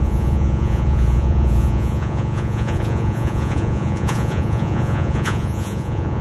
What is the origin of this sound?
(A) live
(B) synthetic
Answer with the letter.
B